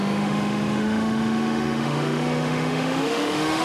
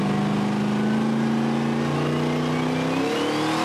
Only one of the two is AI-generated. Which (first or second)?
first